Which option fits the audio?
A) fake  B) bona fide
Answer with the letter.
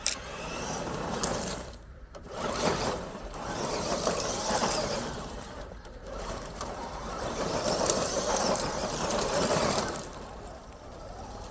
A